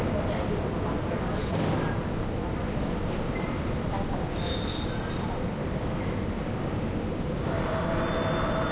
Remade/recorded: recorded